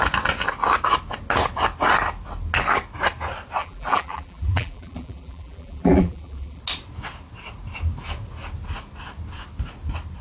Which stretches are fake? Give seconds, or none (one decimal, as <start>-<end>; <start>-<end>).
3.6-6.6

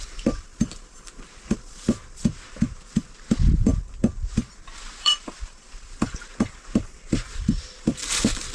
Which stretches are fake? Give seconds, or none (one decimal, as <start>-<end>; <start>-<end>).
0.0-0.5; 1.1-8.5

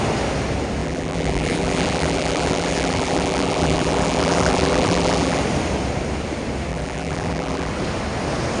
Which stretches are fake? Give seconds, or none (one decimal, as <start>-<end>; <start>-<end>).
0.8-5.4; 6.7-7.7

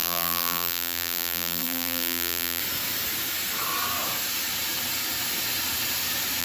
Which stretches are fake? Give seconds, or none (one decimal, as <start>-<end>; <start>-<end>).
0.0-2.6